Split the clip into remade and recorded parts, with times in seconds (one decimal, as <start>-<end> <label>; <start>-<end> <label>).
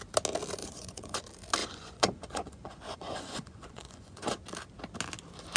0.0-0.6 recorded; 0.6-1.2 remade; 1.2-1.6 recorded; 1.6-4.4 remade; 4.4-5.6 recorded